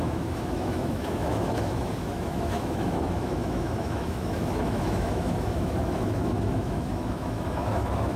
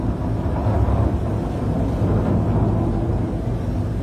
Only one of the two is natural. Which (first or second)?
second